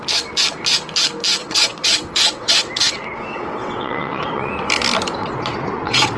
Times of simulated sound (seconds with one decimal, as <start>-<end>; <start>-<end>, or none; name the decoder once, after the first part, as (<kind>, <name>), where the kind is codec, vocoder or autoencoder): 1.4-4.5 (vocoder, WaveNeXt); 5.2-6.2